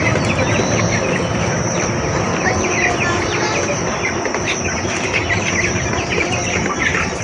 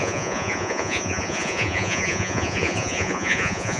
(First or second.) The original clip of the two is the first